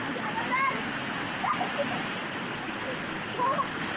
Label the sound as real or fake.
real